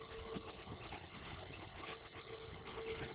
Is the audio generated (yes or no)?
yes